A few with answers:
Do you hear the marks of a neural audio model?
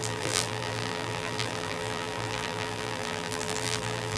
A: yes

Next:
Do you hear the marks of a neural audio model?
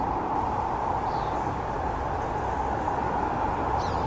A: yes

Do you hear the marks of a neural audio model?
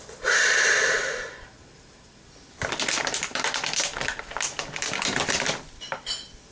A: yes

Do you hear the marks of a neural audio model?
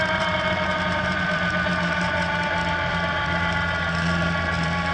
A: yes